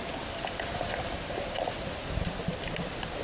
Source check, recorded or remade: remade